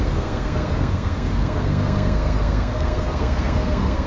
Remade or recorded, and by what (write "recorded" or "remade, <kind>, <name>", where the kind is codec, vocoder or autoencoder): remade, codec, SNAC